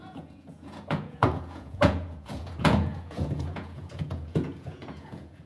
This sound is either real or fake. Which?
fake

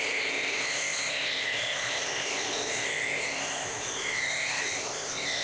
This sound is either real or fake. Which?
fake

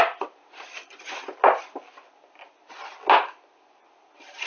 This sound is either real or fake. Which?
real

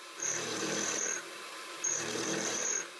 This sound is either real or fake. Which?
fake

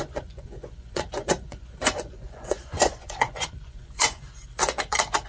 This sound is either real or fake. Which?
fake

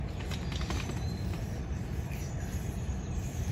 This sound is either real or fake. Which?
fake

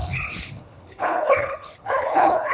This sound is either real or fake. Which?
fake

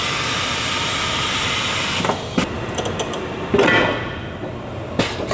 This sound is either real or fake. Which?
real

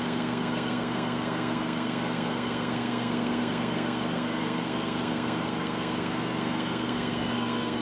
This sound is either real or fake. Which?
fake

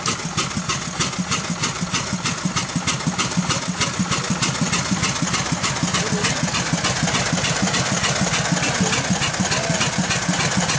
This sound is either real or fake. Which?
real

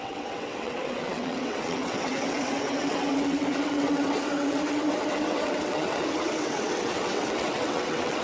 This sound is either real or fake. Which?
fake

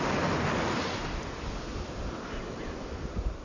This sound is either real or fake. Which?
real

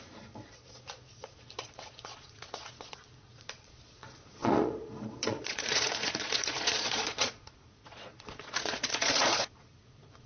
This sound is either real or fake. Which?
fake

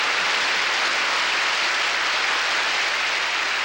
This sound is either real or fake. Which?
real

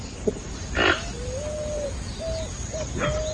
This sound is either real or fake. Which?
real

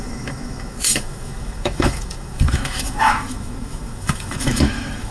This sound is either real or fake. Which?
fake